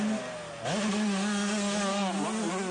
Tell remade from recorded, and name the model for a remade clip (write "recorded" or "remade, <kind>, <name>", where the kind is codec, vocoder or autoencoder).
recorded